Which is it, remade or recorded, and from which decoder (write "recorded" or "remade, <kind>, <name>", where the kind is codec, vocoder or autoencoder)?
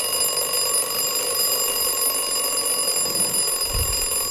recorded